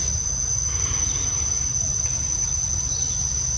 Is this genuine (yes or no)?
yes